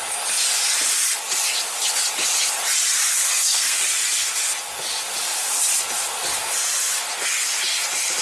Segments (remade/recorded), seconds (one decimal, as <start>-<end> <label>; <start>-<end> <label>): 0.0-3.1 recorded; 3.1-3.8 remade; 3.8-8.2 recorded